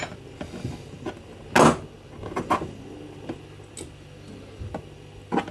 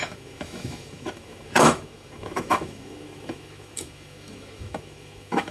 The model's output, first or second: second